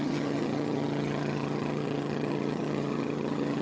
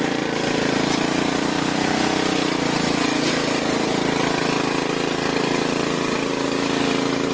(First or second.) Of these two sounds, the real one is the second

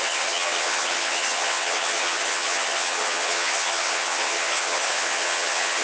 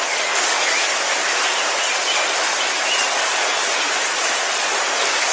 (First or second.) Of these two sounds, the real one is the second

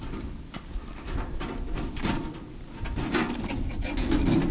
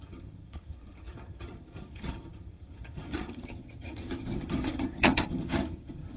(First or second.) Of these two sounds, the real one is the first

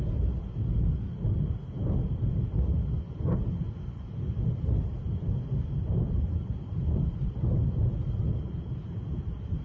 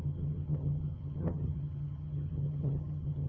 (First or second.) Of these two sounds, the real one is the first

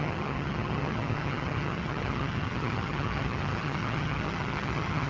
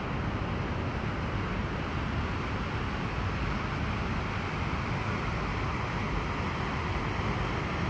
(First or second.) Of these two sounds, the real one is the second